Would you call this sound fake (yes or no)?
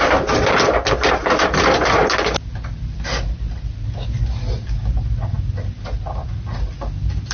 no